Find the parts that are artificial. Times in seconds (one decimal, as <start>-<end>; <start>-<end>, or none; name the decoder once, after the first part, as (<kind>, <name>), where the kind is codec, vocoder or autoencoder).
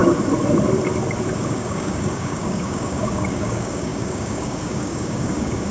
1.4-5.7 (codec, DAC)